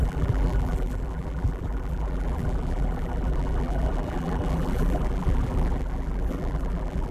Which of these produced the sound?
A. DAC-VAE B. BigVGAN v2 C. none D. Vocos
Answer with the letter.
B